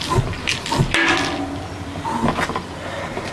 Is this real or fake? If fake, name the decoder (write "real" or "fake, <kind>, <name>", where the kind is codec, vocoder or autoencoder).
real